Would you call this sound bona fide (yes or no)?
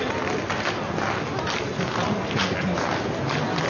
yes